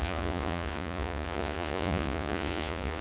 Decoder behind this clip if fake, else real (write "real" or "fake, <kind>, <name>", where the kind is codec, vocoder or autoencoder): fake, vocoder, Vocos